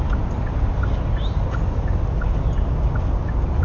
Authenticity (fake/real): real